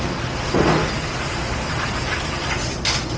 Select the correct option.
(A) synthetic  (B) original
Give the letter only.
B